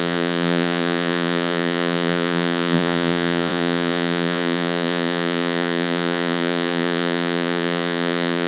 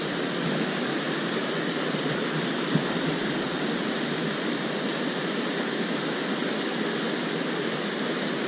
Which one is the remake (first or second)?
first